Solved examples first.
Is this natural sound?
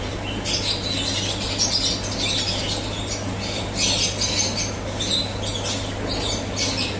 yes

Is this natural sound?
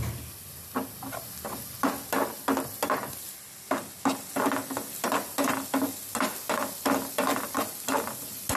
yes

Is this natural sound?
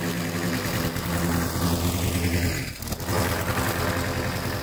yes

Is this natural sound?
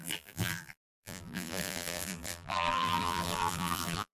no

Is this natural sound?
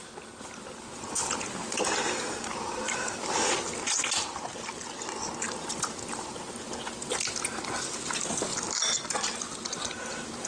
yes